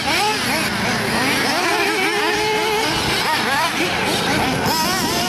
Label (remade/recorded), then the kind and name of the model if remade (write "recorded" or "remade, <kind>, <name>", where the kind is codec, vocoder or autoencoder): recorded